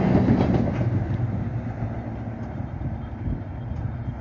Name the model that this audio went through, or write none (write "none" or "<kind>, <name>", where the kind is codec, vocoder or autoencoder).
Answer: none